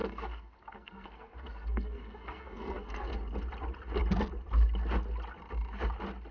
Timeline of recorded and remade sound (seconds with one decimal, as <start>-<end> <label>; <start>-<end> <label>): 0.0-3.1 remade; 3.1-6.3 recorded